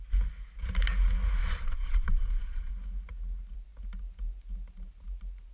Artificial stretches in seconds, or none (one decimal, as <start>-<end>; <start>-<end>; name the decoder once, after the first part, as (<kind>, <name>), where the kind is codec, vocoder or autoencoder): 1.4-2.7 (vocoder, Vocos)